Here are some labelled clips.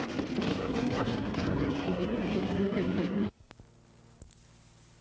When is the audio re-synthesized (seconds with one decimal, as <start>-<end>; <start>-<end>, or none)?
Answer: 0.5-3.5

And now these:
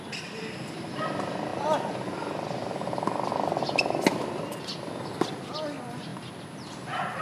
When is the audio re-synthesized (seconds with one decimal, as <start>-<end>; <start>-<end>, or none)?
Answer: none

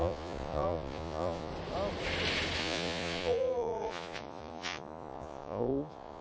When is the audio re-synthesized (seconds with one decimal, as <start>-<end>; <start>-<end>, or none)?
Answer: 0.0-1.5; 2.6-6.2

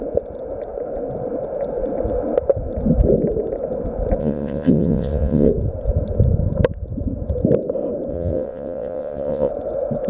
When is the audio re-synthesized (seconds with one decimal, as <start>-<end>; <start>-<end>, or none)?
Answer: 4.2-5.5; 8.1-9.5

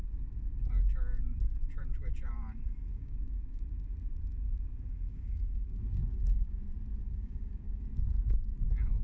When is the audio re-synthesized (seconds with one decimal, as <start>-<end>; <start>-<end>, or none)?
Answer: 2.9-3.6; 5.1-6.6; 7.0-7.8

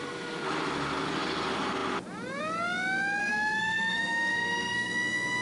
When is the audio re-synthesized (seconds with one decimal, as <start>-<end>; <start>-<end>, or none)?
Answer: 3.2-4.9

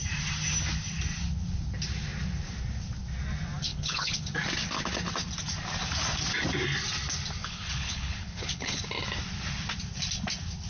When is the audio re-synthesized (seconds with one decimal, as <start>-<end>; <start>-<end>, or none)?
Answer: 3.7-4.3; 7.4-8.8